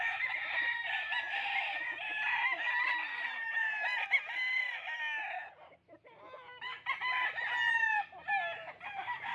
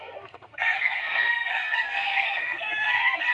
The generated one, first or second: second